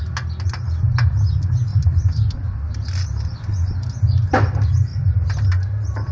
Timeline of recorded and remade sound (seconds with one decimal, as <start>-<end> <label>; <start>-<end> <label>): 0.0-1.7 recorded; 1.7-3.9 remade; 3.9-6.1 recorded